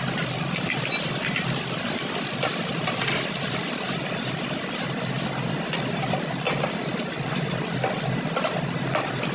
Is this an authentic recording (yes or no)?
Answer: yes